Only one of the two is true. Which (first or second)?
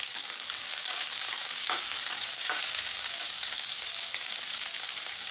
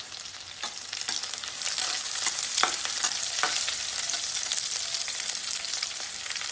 second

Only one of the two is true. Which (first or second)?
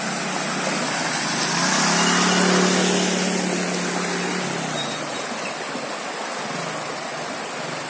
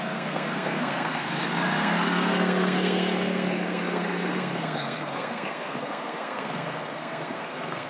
first